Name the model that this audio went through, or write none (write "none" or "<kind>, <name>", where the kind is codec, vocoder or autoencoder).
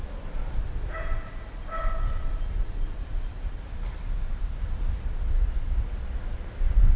none